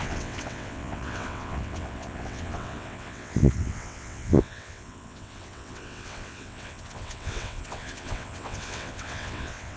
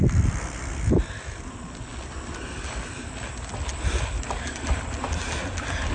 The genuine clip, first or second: second